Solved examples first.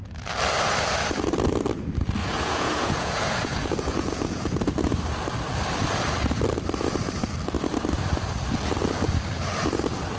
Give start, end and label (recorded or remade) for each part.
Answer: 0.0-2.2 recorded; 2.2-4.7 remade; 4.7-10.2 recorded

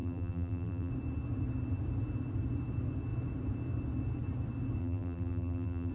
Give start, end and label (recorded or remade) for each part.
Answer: 0.0-0.9 remade; 0.9-4.8 recorded; 4.8-5.9 remade

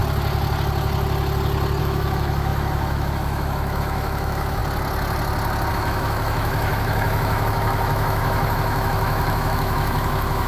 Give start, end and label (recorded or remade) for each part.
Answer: 0.0-1.8 recorded; 1.8-4.6 remade; 4.6-5.7 recorded; 5.7-10.5 remade

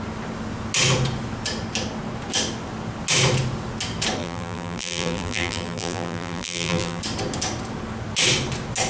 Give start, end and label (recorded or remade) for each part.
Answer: 0.0-4.2 recorded; 4.2-7.0 remade; 7.0-8.9 recorded